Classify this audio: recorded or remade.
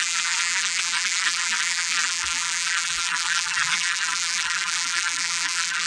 remade